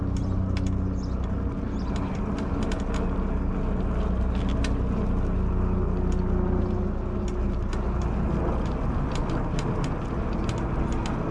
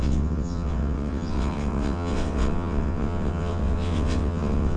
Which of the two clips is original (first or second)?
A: first